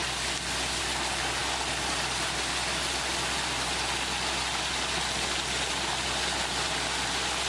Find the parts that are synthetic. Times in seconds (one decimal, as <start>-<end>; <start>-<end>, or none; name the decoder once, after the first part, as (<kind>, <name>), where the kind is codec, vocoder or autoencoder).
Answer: none